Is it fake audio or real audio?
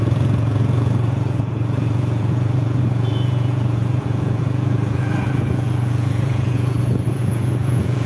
fake